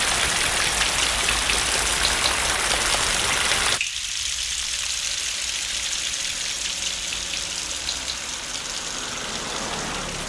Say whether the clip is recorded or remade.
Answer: recorded